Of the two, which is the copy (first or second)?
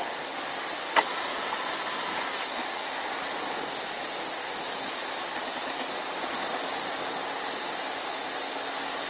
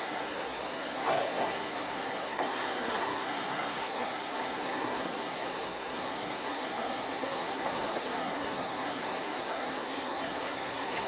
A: second